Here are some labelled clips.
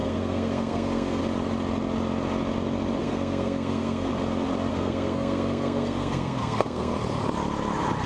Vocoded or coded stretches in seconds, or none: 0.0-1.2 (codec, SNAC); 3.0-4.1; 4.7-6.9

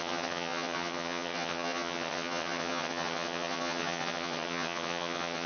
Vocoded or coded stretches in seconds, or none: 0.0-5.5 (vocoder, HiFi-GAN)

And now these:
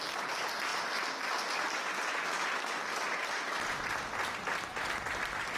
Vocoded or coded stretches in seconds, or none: none